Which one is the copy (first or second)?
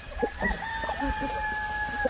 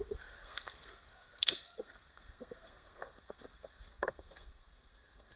second